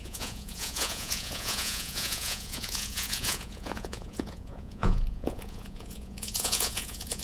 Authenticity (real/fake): fake